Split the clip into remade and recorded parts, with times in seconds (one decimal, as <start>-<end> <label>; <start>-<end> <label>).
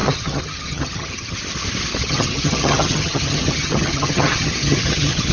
0.0-1.4 remade; 1.4-2.0 recorded; 2.0-5.3 remade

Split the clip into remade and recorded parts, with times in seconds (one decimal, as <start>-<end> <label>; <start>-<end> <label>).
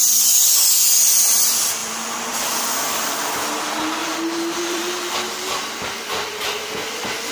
0.0-1.8 recorded; 1.8-3.1 remade; 3.1-4.0 recorded; 4.0-5.8 remade; 5.8-7.3 recorded